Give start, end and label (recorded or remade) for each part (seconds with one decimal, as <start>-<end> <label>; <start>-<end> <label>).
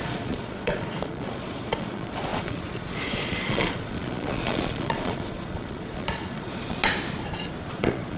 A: 0.0-6.8 remade; 6.8-7.7 recorded; 7.7-8.2 remade